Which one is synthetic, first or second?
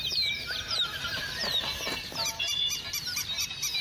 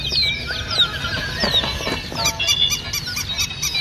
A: first